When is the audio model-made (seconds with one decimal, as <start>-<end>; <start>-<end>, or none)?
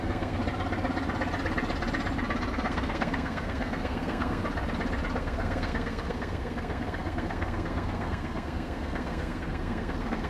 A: 0.0-0.4; 2.5-4.4; 5.2-10.3